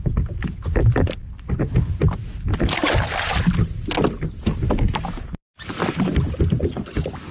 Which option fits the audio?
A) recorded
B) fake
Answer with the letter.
A